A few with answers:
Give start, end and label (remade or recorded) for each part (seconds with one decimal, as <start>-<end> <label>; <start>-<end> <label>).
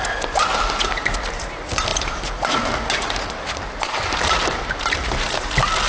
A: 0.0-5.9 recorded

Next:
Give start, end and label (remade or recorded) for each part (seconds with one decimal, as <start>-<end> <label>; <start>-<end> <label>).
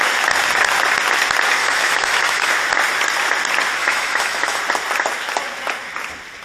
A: 0.0-1.6 recorded; 1.6-2.5 remade; 2.5-3.8 recorded; 3.8-4.6 remade; 4.6-6.4 recorded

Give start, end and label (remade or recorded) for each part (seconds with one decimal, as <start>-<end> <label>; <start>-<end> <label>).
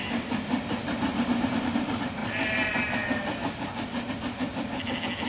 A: 0.0-5.3 recorded